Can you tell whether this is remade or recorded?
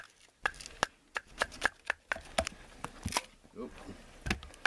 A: recorded